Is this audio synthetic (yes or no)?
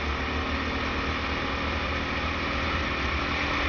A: no